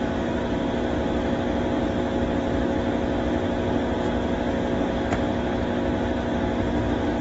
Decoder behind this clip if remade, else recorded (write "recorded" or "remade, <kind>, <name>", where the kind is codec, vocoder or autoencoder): recorded